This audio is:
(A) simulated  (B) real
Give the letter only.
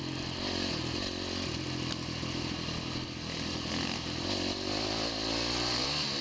B